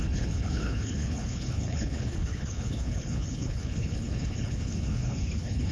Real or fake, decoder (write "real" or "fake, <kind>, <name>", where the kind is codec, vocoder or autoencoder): fake, codec, HILCodec